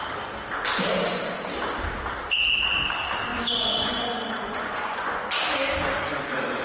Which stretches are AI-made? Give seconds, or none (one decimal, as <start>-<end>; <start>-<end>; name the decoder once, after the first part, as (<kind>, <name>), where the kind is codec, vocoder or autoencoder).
3.3-5.3 (vocoder, Vocos)